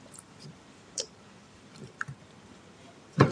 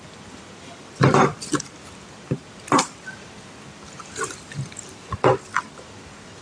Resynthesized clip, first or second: first